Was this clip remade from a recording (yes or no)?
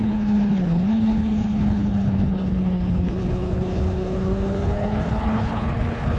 yes